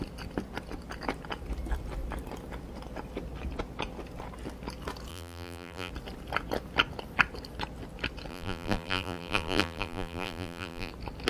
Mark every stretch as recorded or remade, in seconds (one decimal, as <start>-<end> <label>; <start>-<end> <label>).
0.0-5.1 recorded; 5.1-5.9 remade; 5.9-8.3 recorded; 8.3-10.9 remade; 10.9-11.3 recorded